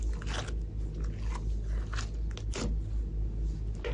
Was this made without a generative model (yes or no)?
yes